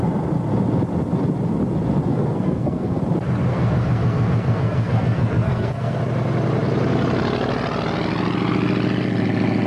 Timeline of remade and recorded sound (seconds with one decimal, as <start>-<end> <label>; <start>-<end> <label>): 0.0-2.1 recorded; 2.1-3.0 remade; 3.0-3.5 recorded; 3.5-6.0 remade; 6.0-9.7 recorded